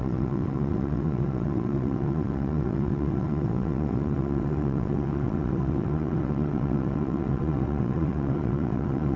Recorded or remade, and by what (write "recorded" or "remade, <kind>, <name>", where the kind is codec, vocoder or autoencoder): remade, vocoder, WaveNeXt